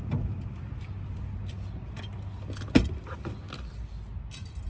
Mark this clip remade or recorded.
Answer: recorded